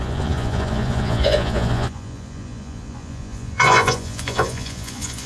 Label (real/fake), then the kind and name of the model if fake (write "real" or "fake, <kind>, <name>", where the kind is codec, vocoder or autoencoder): fake, vocoder, Vocos